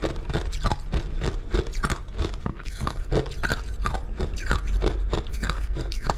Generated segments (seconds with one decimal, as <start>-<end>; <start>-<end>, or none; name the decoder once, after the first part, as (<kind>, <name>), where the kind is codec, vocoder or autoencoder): 2.5-3.1 (codec, SNAC); 5.3-6.2